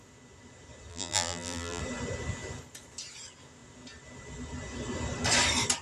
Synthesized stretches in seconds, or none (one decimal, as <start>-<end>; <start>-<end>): 0.9-1.8